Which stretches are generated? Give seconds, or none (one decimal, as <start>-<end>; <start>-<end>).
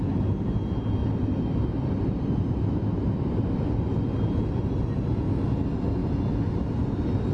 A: none